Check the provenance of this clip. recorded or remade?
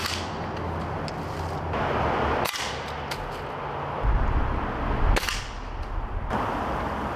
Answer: recorded